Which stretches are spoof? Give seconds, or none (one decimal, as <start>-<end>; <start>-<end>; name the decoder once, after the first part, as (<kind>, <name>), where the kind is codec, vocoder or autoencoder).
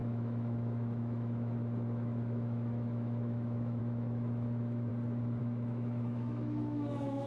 0.0-4.9 (autoencoder, DAC-VAE); 5.4-7.3